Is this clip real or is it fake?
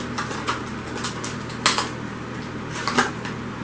real